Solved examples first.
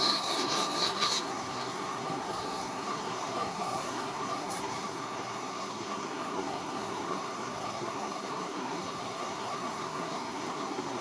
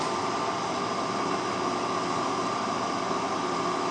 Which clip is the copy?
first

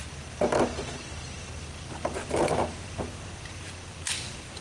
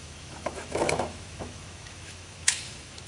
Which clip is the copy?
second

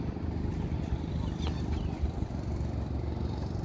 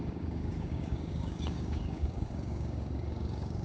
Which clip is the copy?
second